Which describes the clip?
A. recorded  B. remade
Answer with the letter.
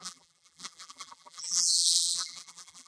B